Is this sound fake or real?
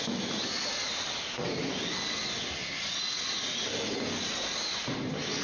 real